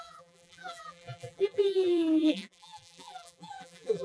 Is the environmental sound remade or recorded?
remade